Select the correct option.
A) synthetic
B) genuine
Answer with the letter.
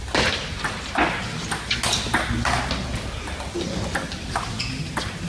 B